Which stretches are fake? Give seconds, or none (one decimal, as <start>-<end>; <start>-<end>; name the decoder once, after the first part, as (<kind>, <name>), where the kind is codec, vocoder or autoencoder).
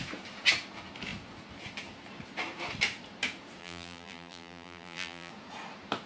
3.6-5.3 (vocoder, BigVGAN v2)